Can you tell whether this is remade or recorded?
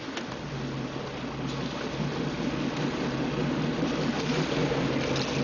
recorded